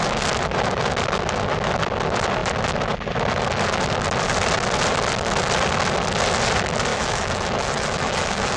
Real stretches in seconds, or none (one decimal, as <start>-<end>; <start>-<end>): 0.0-6.9